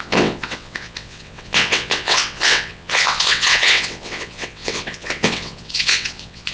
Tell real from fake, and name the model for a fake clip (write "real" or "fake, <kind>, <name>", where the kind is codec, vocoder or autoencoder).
fake, vocoder, WaveNeXt